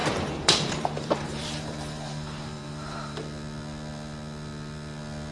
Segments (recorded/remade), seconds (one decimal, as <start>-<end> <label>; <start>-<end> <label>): 0.0-3.2 remade; 3.2-5.3 recorded